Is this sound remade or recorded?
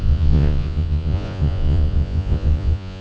remade